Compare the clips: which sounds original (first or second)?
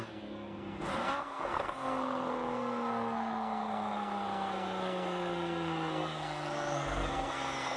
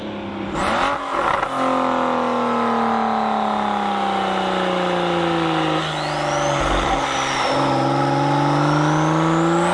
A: second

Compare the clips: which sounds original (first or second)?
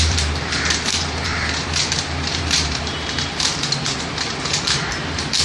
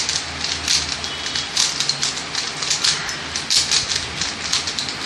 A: second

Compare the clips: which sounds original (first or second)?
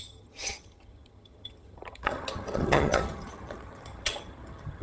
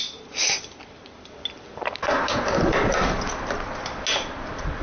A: second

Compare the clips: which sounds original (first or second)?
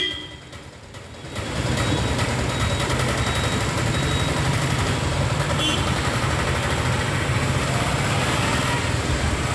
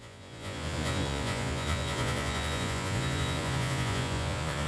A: first